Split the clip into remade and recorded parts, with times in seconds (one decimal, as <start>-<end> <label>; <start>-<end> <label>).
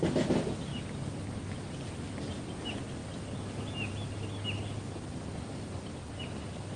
0.0-6.8 recorded